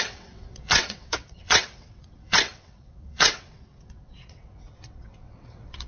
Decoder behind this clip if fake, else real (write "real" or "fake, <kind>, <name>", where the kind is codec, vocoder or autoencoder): fake, vocoder, WaveNeXt